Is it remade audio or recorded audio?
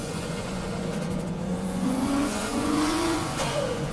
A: remade